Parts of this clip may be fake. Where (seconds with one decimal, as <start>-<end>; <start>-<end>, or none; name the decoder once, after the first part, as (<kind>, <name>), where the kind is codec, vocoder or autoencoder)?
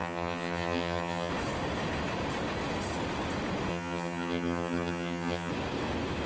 0.0-1.3 (vocoder, HiFi-GAN); 3.7-5.5